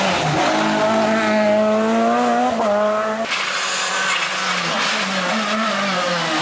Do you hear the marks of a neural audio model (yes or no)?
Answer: no